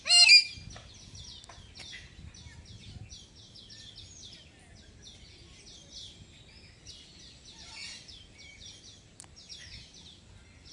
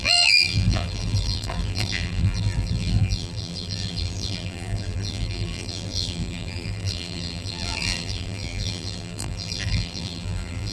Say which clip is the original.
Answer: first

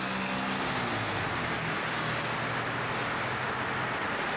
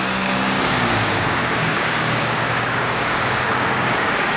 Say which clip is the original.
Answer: first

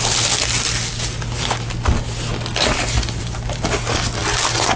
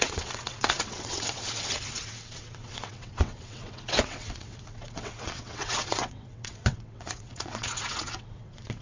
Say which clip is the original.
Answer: first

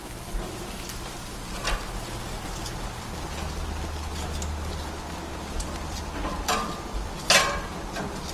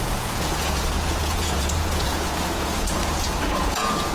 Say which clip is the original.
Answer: first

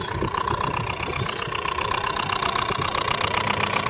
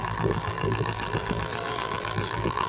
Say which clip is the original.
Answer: first